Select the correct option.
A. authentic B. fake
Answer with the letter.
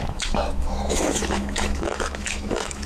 B